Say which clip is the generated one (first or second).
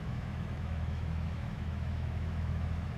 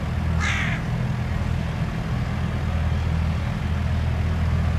first